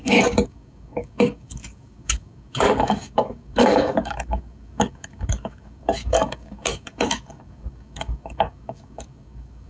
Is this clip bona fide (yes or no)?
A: no